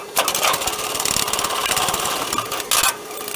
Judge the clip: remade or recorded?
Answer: recorded